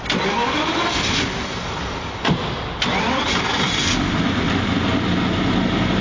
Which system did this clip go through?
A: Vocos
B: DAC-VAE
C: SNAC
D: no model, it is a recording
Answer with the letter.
D